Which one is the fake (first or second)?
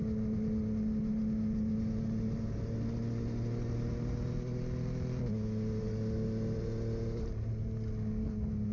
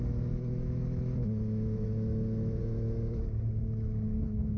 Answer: second